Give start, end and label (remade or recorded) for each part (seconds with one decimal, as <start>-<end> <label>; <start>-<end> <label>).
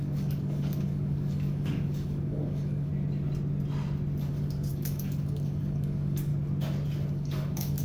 0.0-2.9 remade; 2.9-4.3 recorded; 4.3-6.3 remade; 6.3-7.1 recorded; 7.1-7.8 remade